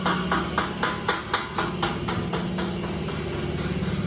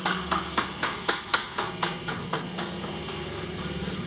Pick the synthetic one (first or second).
second